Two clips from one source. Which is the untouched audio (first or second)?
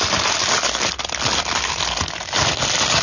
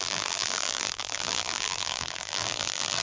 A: first